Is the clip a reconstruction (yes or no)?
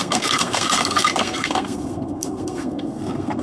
yes